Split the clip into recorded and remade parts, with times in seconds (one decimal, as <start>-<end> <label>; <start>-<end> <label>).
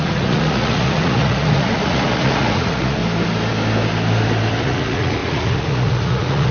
0.0-3.0 remade; 3.0-4.6 recorded; 4.6-6.5 remade